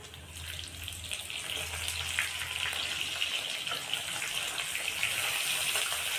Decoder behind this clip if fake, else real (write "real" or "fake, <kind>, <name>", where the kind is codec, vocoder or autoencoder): real